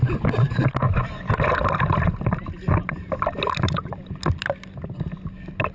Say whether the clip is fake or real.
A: real